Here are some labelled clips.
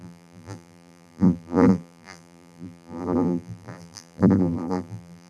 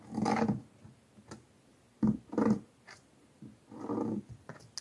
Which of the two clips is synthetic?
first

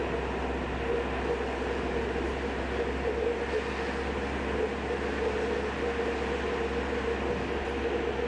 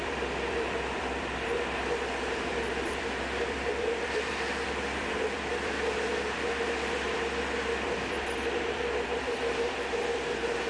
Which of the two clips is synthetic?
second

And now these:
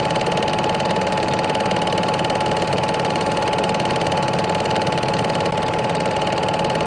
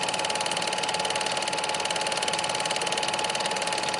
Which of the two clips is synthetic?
first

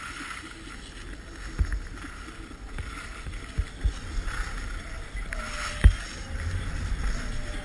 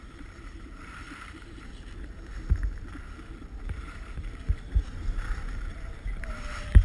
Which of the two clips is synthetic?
second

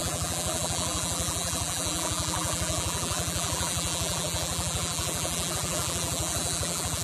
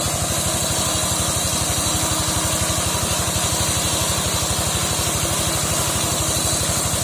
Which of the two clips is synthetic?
first